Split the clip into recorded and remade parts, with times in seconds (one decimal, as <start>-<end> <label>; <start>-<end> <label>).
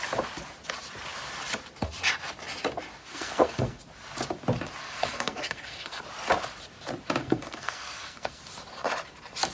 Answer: 0.0-3.0 recorded; 3.0-3.8 remade; 3.8-4.8 recorded; 4.8-6.0 remade; 6.0-7.2 recorded; 7.2-8.4 remade; 8.4-9.5 recorded